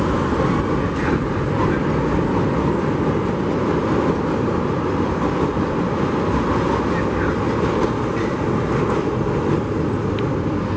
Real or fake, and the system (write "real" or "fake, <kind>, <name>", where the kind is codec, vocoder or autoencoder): real